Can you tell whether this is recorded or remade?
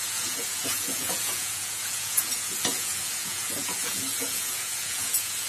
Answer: remade